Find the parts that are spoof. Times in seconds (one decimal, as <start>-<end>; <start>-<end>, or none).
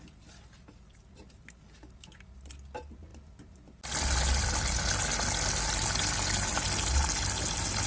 none